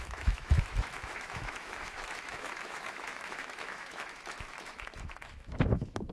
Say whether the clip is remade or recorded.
remade